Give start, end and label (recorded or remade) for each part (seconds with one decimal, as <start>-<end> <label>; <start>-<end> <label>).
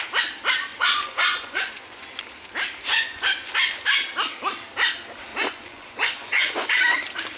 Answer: 0.0-0.7 recorded; 0.7-2.0 remade; 2.0-2.9 recorded; 2.9-3.5 remade; 3.5-5.3 recorded; 5.3-6.8 remade; 6.8-7.4 recorded